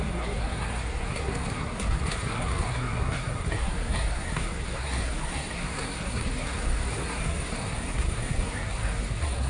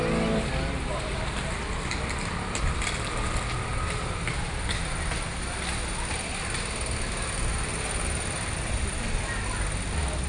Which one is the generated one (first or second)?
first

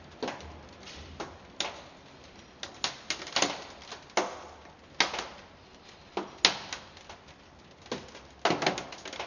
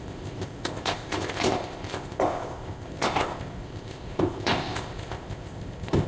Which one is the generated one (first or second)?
second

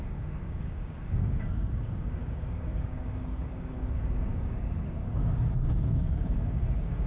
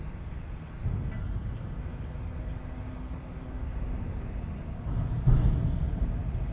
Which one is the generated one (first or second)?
first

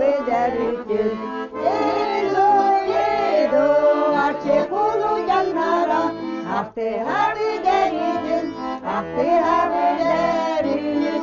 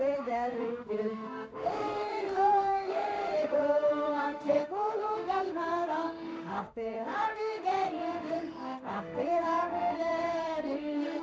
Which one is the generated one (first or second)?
second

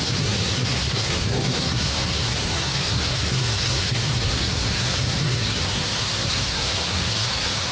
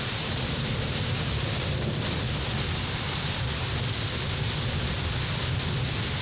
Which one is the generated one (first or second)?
first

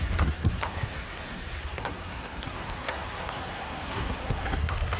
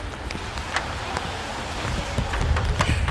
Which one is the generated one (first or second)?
first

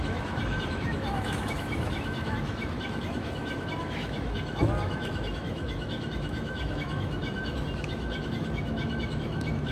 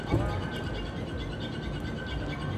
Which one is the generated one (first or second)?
first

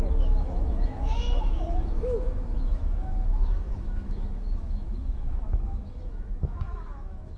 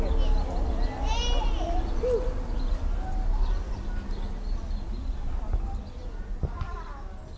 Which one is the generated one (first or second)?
first